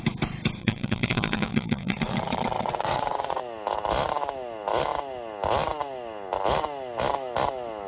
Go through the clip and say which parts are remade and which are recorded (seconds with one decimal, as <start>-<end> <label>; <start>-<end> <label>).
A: 0.0-0.6 recorded; 0.6-3.4 remade; 3.4-7.9 recorded